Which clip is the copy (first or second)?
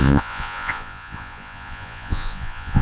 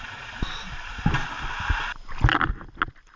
first